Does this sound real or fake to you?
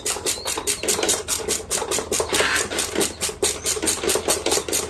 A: fake